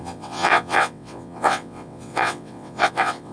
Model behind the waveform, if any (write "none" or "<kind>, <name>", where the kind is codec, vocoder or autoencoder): vocoder, WaveNeXt